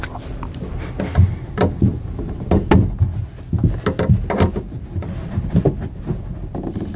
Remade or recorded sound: recorded